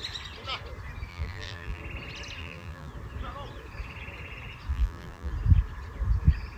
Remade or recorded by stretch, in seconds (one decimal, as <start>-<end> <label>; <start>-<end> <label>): 0.0-1.1 recorded; 1.1-1.8 remade; 1.8-2.4 recorded; 2.4-2.9 remade; 2.9-4.7 recorded; 4.7-5.3 remade; 5.3-6.6 recorded